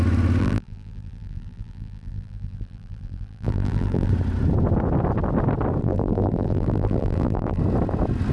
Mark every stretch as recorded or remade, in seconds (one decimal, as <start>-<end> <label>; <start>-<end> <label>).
0.0-0.4 recorded; 0.4-4.1 remade; 4.1-5.8 recorded; 5.8-7.6 remade; 7.6-8.3 recorded

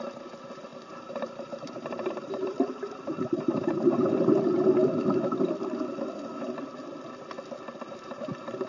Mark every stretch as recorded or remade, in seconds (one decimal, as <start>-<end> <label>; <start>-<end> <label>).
0.0-4.5 remade; 4.5-7.9 recorded; 7.9-8.7 remade

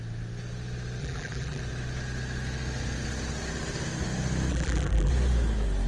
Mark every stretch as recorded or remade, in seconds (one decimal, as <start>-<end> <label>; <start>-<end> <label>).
0.0-1.0 recorded; 1.0-1.6 remade; 1.6-4.5 recorded; 4.5-5.1 remade; 5.1-5.9 recorded